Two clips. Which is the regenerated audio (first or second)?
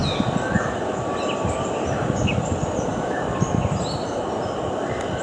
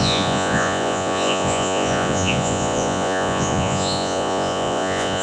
second